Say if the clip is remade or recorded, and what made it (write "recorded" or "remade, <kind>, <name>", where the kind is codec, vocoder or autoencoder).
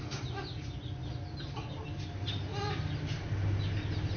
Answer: recorded